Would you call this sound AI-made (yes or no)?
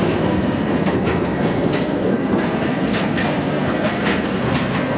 yes